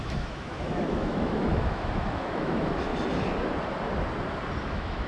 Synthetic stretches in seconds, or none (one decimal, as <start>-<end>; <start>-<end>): 0.0-2.9; 4.6-5.1